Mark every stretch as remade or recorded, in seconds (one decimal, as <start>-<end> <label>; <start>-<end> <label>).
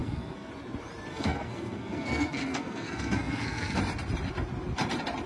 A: 0.0-0.5 remade; 0.5-1.1 recorded; 1.1-3.8 remade; 3.8-5.3 recorded